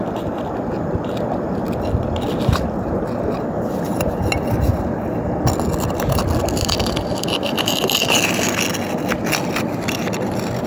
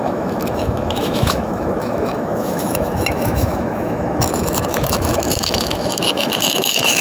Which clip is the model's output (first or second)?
second